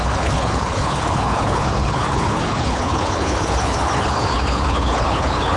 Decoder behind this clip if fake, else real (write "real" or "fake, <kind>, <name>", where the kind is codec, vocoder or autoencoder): fake, codec, HILCodec